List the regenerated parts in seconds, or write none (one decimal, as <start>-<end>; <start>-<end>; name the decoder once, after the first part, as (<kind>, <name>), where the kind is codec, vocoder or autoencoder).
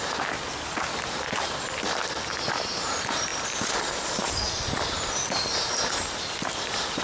none